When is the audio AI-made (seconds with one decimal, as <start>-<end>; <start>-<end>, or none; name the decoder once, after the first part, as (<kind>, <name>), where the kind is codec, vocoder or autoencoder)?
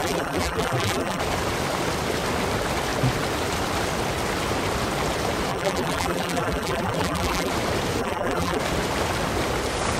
0.0-1.2 (vocoder, BigVGAN v2); 5.5-7.5; 8.0-8.6